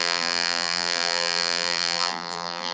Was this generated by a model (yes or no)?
yes